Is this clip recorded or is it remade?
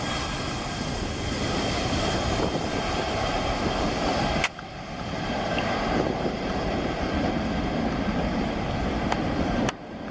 recorded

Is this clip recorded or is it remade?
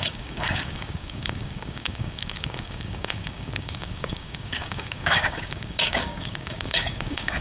remade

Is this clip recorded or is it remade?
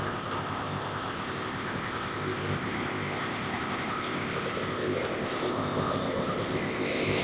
remade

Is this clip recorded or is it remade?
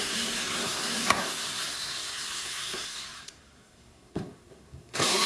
remade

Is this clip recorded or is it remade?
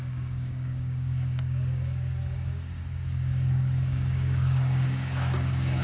remade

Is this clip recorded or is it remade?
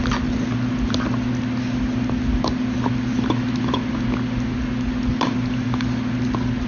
recorded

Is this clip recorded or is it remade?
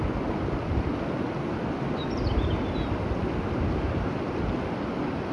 recorded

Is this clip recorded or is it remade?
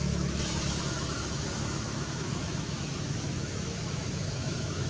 remade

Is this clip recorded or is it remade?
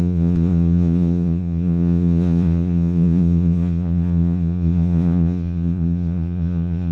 remade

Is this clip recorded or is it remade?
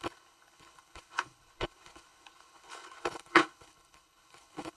remade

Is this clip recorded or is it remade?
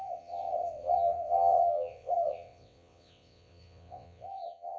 remade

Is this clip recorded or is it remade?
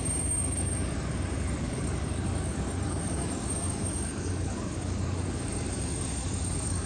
remade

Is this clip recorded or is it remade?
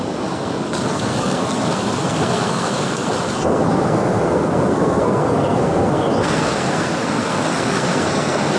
remade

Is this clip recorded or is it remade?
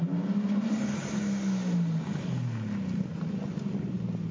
recorded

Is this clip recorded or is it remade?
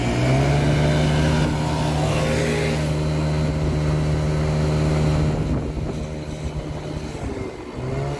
recorded